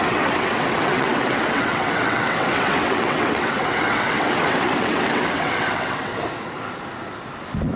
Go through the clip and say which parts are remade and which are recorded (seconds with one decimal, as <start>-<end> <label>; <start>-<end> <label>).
0.0-6.1 remade; 6.1-7.8 recorded